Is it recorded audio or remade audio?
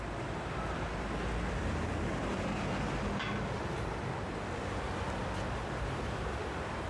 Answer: recorded